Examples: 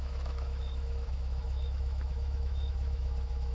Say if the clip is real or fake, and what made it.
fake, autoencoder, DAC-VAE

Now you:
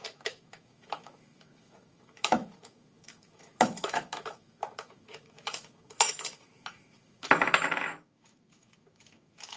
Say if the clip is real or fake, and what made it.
fake, autoencoder, DAC-VAE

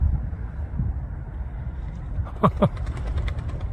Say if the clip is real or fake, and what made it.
real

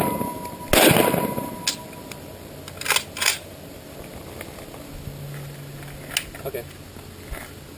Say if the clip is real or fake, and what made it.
real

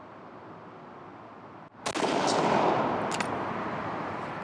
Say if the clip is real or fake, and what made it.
real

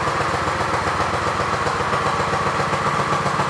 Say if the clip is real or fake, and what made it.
real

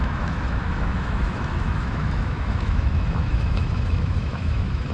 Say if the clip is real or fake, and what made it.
fake, autoencoder, DAC-VAE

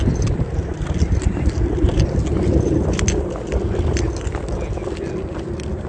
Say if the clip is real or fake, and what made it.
real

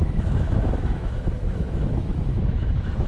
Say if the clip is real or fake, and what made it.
fake, autoencoder, DAC-VAE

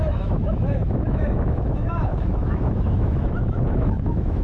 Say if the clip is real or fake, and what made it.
fake, autoencoder, DAC-VAE